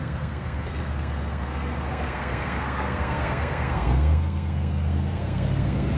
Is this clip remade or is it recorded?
remade